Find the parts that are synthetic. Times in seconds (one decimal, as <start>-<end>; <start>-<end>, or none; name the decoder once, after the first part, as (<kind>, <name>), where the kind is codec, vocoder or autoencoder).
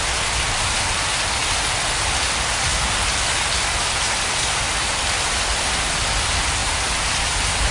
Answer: none